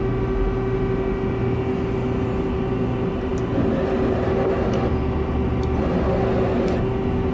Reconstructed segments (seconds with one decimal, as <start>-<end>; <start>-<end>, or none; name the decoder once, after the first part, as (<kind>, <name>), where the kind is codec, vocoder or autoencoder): none